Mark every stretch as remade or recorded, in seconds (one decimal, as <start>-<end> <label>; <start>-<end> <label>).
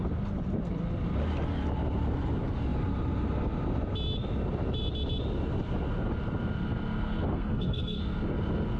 0.0-7.3 recorded; 7.3-8.0 remade; 8.0-8.8 recorded